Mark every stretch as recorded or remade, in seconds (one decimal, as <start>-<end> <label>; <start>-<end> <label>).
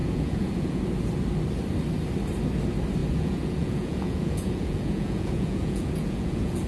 0.0-0.8 remade; 0.8-3.0 recorded; 3.0-6.7 remade